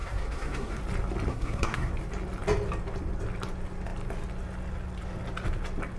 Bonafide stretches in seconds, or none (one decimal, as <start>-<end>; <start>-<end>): 0.8-1.3; 1.9-6.0